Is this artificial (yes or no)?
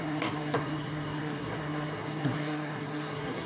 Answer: yes